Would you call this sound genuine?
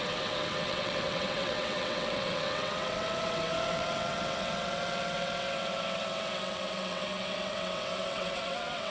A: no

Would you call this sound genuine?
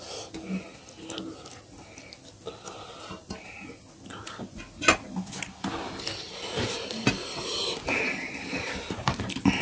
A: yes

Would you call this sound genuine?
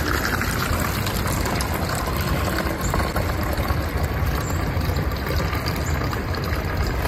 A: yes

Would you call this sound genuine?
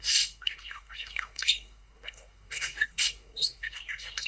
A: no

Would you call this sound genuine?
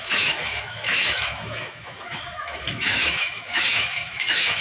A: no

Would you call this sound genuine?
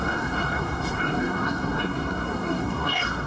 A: no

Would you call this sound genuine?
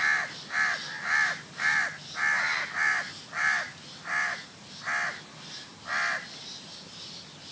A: yes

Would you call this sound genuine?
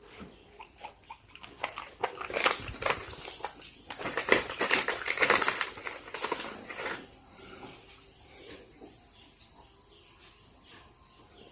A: yes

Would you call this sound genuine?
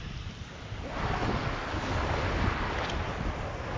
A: yes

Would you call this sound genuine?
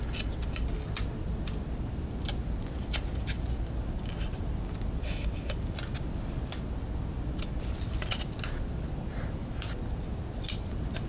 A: yes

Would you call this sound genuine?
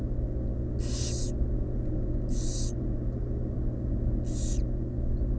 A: yes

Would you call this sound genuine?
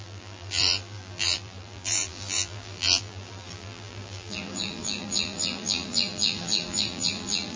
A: no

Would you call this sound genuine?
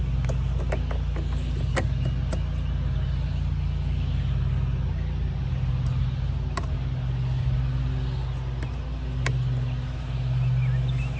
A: yes